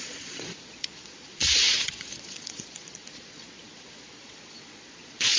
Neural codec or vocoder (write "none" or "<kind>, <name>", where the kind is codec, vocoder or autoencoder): vocoder, Vocos